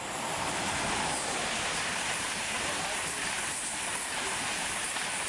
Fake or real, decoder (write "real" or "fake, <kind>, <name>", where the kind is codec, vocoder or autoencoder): fake, vocoder, BigVGAN v2